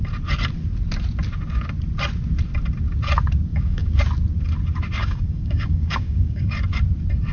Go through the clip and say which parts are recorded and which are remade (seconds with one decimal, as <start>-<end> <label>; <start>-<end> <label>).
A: 0.0-3.5 recorded; 3.5-4.0 remade; 4.0-5.0 recorded; 5.0-6.5 remade; 6.5-7.3 recorded